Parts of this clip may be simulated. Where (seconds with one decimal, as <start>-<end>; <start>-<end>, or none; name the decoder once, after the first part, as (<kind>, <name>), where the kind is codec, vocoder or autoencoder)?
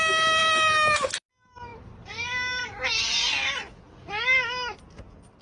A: none